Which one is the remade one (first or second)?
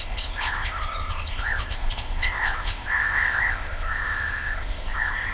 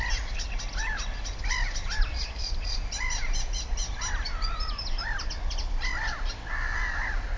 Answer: first